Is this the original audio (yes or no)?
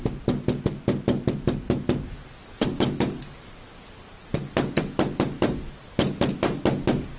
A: yes